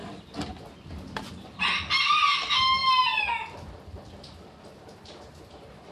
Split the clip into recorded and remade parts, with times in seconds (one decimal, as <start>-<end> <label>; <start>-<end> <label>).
0.0-5.9 recorded